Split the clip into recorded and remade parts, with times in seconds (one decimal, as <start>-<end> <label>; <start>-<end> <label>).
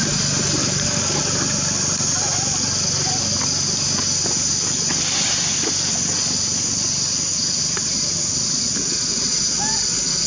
0.0-0.6 recorded; 0.6-1.2 remade; 1.2-10.3 recorded